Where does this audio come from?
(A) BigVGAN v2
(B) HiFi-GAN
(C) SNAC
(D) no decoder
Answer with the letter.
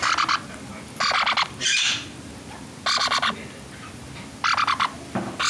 D